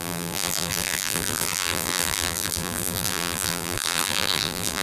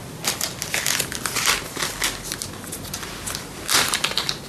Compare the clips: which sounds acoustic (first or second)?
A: second